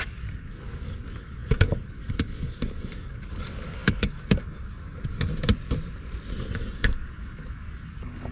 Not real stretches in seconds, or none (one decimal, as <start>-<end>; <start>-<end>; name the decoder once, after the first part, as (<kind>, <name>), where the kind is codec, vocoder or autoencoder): 0.0-5.3 (codec, DAC); 6.5-8.3